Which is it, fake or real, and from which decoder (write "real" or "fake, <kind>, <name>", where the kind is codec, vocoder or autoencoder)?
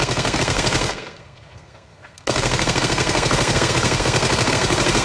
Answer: fake, codec, SNAC